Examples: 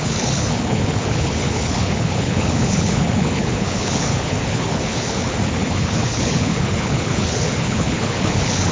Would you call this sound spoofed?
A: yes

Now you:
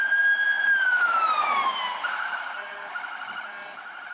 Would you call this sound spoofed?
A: no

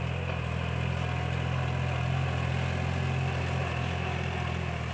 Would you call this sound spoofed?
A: no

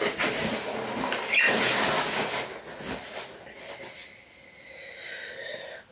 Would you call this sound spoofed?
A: no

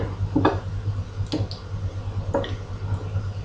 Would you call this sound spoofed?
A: no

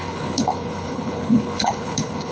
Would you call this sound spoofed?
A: yes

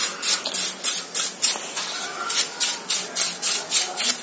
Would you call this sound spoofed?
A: no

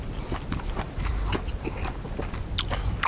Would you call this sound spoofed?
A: no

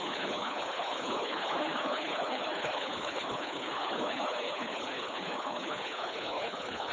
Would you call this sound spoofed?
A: yes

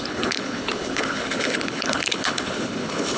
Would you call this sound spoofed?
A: yes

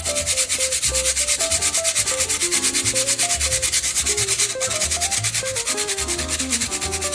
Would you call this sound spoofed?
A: no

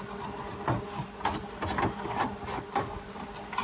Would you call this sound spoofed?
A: no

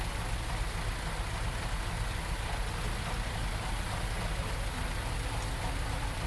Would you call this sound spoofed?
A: no